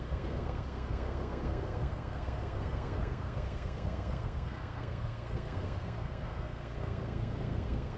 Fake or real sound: fake